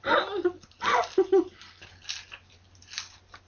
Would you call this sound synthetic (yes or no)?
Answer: no